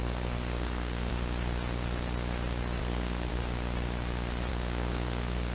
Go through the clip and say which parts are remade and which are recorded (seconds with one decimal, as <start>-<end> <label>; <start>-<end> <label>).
0.0-1.1 remade; 1.1-2.8 recorded; 2.8-3.3 remade; 3.3-4.5 recorded; 4.5-5.5 remade